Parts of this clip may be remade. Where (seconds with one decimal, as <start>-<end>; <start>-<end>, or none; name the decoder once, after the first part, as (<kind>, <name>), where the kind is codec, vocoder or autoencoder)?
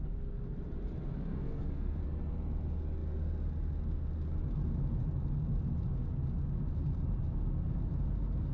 1.3-2.0 (codec, SNAC)